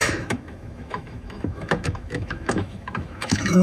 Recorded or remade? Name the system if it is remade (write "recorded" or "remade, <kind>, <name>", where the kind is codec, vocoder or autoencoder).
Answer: remade, autoencoder, DAC-VAE